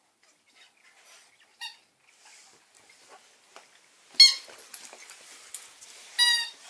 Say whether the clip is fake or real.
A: real